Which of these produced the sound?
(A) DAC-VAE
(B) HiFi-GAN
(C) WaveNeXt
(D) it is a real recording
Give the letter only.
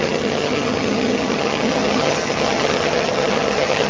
B